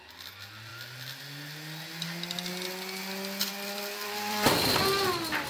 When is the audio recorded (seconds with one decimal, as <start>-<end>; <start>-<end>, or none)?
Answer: 0.0-3.5; 4.7-5.5